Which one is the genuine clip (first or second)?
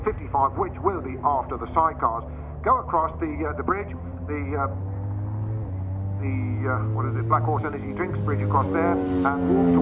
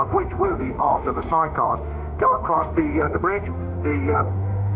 first